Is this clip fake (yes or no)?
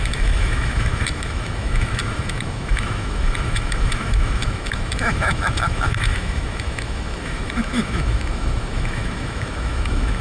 yes